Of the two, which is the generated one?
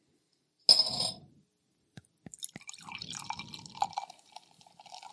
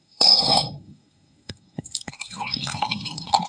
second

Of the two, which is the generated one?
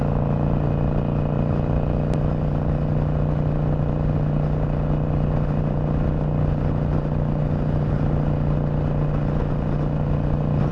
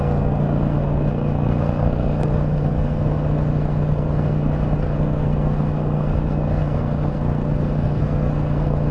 second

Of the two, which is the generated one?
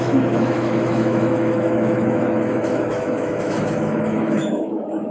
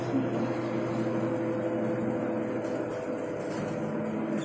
first